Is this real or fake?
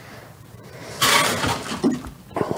fake